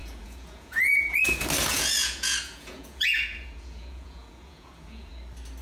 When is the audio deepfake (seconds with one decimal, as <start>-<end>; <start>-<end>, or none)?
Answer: 0.0-1.2; 1.7-5.1